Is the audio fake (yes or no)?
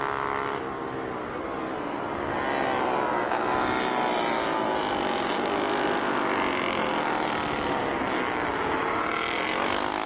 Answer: no